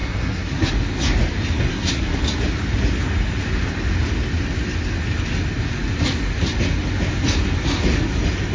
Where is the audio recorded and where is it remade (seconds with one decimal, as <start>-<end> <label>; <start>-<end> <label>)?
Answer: 0.0-0.7 remade; 0.7-1.7 recorded; 1.7-2.2 remade; 2.2-8.5 recorded